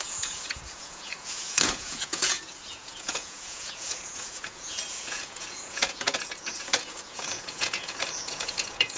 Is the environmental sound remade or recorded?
remade